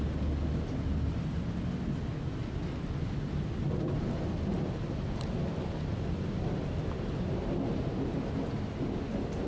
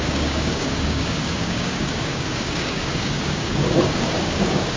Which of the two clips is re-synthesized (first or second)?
second